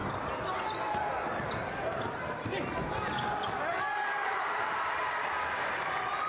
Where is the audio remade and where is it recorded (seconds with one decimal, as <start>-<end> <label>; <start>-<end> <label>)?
0.0-4.2 recorded; 4.2-4.9 remade; 4.9-6.3 recorded